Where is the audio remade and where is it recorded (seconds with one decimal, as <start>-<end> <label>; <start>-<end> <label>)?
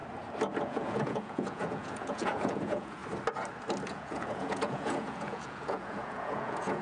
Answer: 0.0-0.6 recorded; 0.6-3.0 remade; 3.0-3.9 recorded; 3.9-6.8 remade